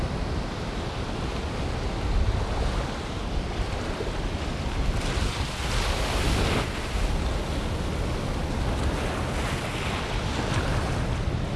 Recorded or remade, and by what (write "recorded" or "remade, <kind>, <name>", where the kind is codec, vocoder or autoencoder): recorded